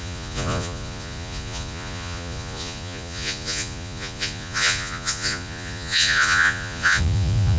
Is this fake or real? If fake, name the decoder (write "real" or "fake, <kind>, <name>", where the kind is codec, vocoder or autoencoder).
fake, vocoder, Vocos